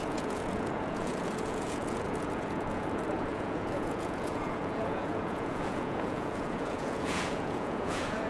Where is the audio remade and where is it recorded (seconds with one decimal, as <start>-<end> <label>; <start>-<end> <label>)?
0.0-8.3 remade

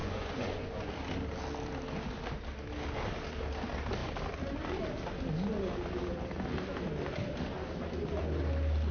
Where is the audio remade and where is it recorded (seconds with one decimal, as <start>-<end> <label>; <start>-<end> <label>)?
0.0-0.9 remade; 0.9-8.9 recorded

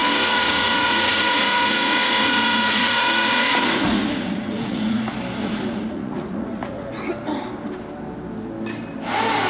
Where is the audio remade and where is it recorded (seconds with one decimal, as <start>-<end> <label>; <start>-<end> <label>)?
0.0-5.0 remade; 5.0-5.4 recorded; 5.4-6.9 remade; 6.9-9.5 recorded

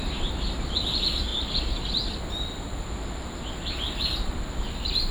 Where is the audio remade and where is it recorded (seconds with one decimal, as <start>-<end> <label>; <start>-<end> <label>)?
0.0-5.1 recorded

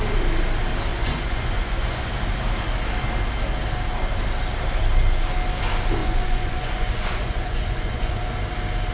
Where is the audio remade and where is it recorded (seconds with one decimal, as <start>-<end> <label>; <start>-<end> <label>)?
0.0-0.9 recorded; 0.9-2.1 remade; 2.1-6.0 recorded; 6.0-8.2 remade; 8.2-8.9 recorded

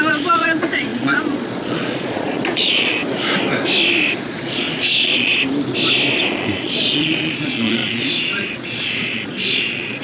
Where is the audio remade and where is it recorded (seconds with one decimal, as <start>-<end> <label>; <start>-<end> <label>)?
0.0-3.0 remade; 3.0-4.2 recorded; 4.2-5.3 remade; 5.3-6.3 recorded; 6.3-10.0 remade